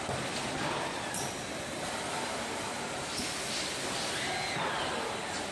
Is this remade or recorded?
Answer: recorded